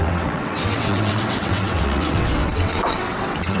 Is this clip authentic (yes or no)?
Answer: no